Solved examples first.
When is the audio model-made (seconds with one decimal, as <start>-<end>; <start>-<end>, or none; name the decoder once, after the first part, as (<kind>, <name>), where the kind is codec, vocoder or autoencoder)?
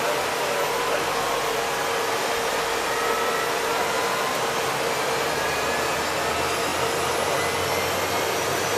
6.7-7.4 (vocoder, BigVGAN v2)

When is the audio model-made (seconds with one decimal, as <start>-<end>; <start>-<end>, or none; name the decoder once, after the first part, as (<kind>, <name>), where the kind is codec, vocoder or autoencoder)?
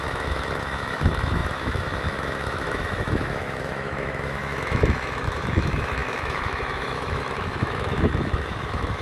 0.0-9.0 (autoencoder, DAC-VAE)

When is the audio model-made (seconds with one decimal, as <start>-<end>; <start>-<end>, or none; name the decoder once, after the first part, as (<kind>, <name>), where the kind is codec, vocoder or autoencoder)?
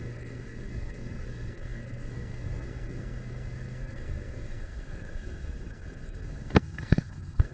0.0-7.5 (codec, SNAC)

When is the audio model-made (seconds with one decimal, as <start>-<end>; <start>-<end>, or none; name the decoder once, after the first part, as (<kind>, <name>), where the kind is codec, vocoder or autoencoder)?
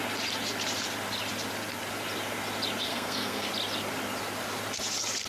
2.9-3.5 (codec, SNAC)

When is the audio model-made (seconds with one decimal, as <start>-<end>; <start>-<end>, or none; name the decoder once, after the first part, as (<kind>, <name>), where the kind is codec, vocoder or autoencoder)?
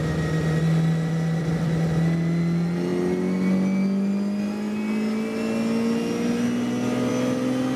none